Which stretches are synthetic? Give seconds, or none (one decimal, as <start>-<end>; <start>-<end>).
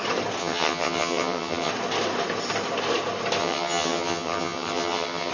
0.4-1.7; 3.4-5.3